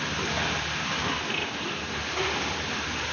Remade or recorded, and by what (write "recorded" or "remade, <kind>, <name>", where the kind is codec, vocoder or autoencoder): recorded